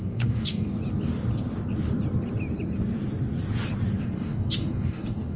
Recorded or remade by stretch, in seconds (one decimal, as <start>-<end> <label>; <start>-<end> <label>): 0.0-0.8 remade; 0.8-4.0 recorded; 4.0-5.4 remade